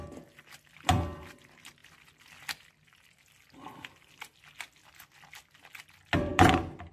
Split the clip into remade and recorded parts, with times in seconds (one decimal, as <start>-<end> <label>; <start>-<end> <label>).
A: 0.0-6.9 recorded